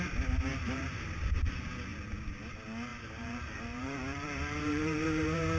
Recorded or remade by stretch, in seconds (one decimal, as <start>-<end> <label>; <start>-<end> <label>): 0.0-0.5 recorded; 0.5-1.1 remade; 1.1-2.9 recorded; 2.9-5.6 remade